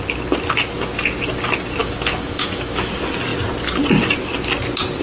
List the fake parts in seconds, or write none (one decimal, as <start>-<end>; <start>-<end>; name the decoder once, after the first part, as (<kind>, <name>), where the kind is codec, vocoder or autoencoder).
1.8-2.9 (autoencoder, DAC-VAE)